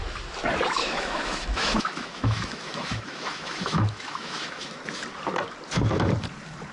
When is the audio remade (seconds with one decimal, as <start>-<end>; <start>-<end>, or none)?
0.8-4.8